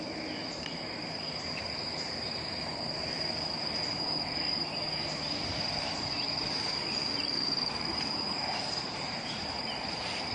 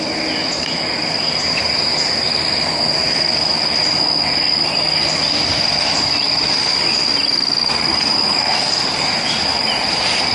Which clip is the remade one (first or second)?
first